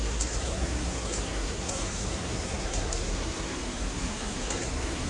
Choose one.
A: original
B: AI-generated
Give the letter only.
B